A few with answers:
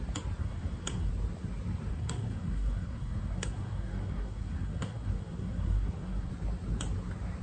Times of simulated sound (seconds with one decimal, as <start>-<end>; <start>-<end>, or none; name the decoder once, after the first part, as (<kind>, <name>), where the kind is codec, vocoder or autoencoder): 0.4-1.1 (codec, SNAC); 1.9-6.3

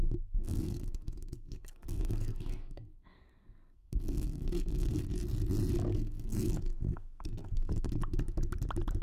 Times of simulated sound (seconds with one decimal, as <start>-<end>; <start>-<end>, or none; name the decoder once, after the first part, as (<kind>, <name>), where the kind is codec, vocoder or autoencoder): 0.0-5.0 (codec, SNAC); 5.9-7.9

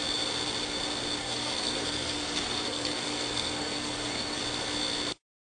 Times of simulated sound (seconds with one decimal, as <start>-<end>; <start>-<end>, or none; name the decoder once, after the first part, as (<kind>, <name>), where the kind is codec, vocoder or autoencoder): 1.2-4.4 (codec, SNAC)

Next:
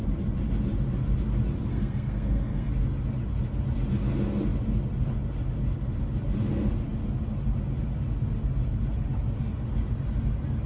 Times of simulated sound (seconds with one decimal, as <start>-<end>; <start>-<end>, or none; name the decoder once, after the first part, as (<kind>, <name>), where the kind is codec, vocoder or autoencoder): 1.7-2.7 (codec, SNAC)

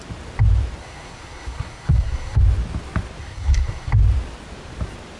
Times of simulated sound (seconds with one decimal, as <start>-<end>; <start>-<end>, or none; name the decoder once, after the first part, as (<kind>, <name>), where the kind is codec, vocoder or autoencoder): 0.8-2.4 (codec, SNAC); 3.2-3.9